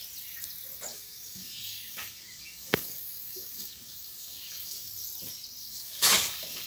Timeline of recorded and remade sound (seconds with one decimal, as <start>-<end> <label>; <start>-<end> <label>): 0.0-0.9 recorded; 0.9-4.9 remade; 4.9-5.6 recorded; 5.6-6.7 remade